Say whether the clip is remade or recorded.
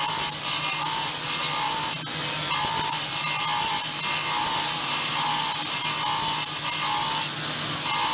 recorded